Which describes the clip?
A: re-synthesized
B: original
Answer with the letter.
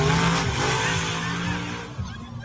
B